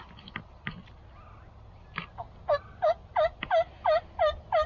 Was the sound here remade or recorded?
recorded